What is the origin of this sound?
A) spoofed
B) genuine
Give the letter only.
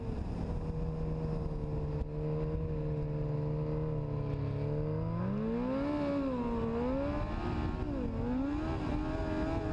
B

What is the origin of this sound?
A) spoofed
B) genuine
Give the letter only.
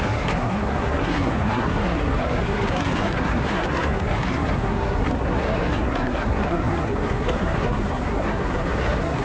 A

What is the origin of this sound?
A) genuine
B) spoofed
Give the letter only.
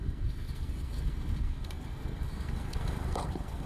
B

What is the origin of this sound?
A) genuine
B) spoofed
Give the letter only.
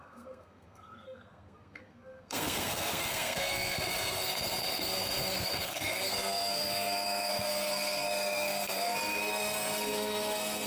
B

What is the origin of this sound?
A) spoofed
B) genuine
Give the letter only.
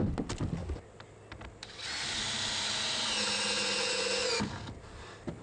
B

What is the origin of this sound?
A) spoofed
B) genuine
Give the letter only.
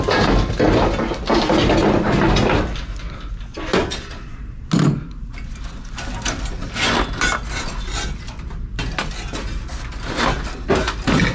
B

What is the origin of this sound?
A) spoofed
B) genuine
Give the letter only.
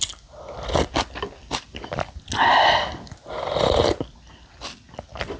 B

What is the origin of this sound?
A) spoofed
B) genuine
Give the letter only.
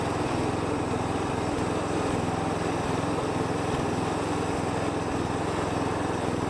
B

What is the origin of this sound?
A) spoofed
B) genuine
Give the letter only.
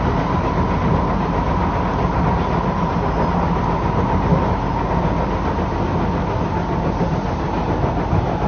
B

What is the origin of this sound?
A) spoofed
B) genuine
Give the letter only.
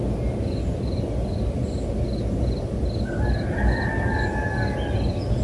B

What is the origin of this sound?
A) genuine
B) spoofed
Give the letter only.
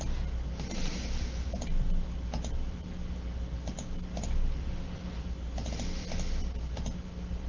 A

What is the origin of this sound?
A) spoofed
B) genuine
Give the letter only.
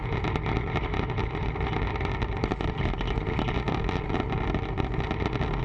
B